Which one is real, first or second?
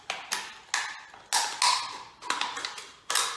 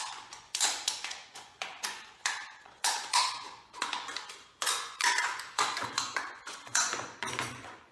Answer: first